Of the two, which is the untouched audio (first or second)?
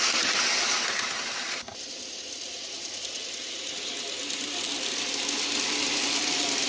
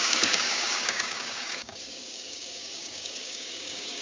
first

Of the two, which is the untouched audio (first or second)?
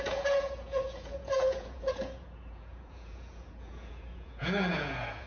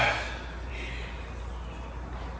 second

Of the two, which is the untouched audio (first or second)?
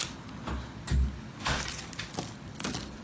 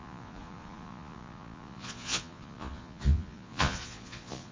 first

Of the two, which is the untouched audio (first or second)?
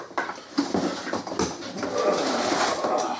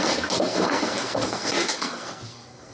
first